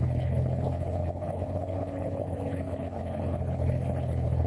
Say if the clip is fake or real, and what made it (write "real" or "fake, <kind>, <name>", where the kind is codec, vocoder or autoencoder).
fake, codec, HILCodec